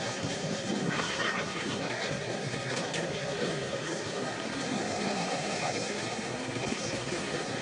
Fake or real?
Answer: fake